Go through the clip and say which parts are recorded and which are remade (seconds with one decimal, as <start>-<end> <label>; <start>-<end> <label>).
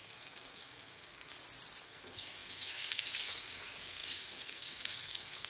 0.0-1.3 remade; 1.3-1.8 recorded; 1.8-5.5 remade